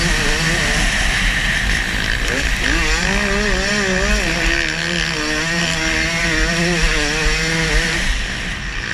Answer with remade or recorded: recorded